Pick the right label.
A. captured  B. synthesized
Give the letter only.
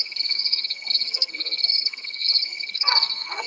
B